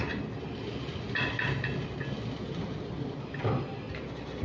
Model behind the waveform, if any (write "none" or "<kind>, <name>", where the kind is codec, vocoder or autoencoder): none